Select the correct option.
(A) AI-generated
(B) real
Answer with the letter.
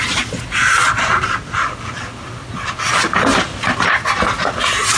B